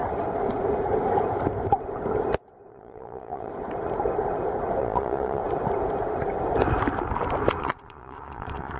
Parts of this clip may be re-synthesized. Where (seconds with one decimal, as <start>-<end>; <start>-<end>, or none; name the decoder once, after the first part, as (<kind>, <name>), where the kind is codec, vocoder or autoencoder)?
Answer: 2.7-3.5 (vocoder, Vocos); 4.8-5.4; 7.6-8.8